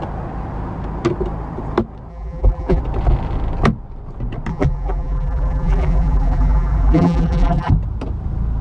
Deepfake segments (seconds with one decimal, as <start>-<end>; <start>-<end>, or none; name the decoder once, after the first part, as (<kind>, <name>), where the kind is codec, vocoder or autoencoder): 2.1-2.8 (vocoder, BigVGAN v2); 4.5-7.7

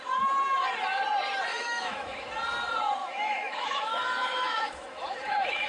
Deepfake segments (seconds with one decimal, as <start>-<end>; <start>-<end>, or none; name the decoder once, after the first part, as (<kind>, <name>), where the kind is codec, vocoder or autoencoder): 1.5-2.3 (autoencoder, DAC-VAE); 3.0-5.7